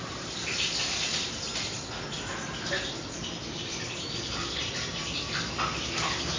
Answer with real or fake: real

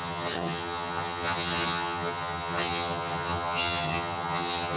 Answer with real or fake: fake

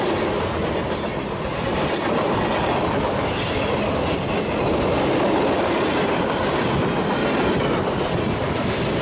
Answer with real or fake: real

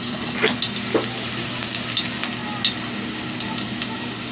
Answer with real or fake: real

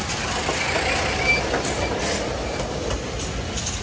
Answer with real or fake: real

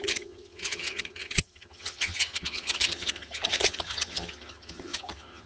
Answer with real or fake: fake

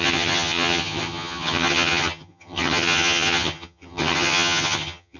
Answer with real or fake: fake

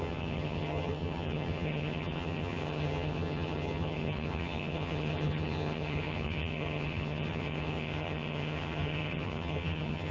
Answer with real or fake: fake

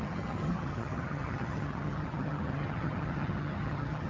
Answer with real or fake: fake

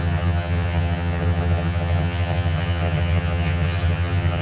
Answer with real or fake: fake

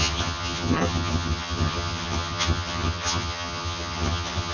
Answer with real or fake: fake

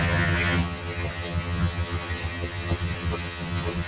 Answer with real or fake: fake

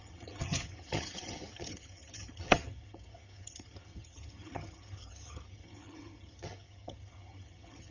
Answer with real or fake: fake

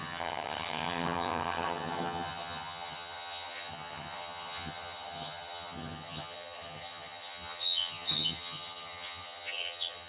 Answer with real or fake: fake